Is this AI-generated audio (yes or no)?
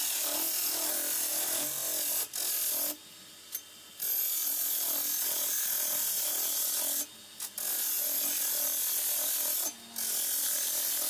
no